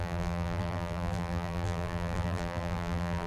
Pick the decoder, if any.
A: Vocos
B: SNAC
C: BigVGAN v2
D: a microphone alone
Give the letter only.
C